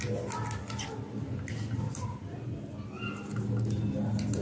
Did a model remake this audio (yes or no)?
no